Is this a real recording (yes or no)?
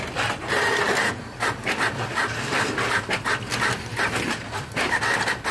yes